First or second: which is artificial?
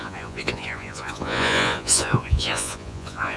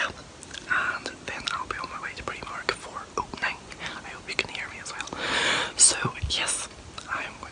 first